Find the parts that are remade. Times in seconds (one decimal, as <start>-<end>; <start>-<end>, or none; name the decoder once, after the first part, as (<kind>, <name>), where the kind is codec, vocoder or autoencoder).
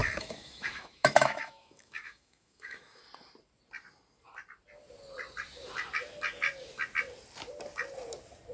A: 0.0-3.0 (autoencoder, DAC-VAE)